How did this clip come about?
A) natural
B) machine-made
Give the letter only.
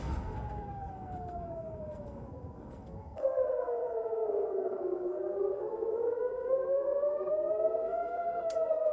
B